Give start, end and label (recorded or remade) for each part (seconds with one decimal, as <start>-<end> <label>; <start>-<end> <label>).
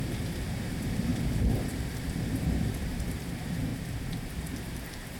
0.0-1.1 remade; 1.1-1.7 recorded; 1.7-3.7 remade; 3.7-4.3 recorded; 4.3-5.2 remade